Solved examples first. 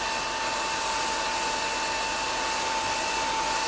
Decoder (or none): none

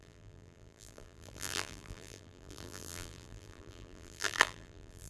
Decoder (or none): vocoder, BigVGAN v2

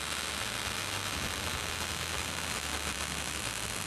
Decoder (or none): none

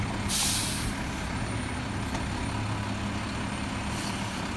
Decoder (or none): none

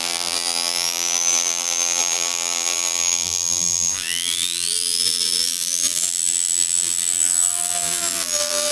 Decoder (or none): vocoder, BigVGAN v2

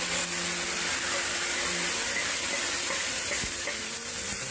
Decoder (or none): none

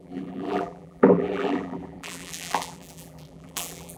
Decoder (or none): vocoder, BigVGAN v2